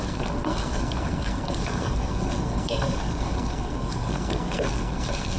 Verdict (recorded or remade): remade